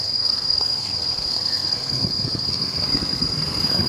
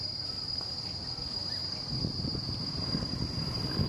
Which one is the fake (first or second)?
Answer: first